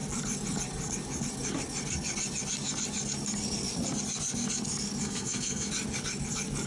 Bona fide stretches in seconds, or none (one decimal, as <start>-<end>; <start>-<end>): 0.0-5.0; 5.7-6.7